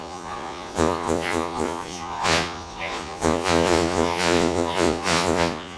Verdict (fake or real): fake